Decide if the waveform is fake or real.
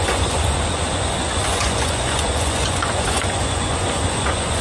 fake